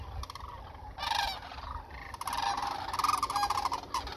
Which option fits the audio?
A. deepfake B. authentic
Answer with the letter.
B